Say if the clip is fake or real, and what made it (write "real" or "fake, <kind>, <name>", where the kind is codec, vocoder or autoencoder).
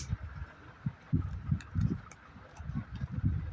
real